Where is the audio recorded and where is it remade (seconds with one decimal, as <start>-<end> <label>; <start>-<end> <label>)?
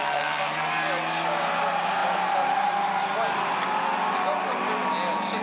0.0-5.4 recorded